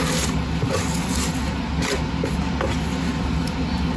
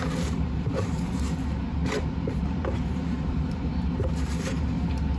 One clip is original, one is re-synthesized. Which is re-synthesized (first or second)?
second